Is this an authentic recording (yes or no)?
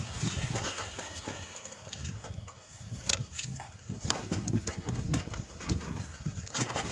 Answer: no